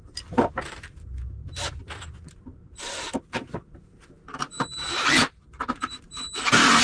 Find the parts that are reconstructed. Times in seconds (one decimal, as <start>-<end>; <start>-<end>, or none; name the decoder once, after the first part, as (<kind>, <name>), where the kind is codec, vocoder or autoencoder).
0.0-6.8 (vocoder, BigVGAN v2)